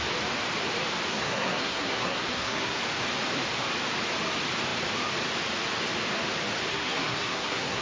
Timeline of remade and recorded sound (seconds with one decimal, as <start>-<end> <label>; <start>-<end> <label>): 0.0-1.1 recorded; 1.1-2.8 remade; 2.8-6.7 recorded; 6.7-7.8 remade